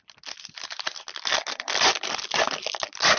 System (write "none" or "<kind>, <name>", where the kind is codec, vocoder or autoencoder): none